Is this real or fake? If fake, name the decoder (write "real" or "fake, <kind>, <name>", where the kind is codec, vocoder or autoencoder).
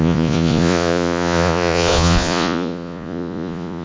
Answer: fake, vocoder, Vocos